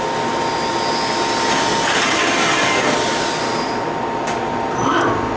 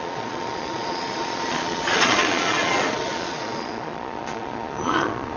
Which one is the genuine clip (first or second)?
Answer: first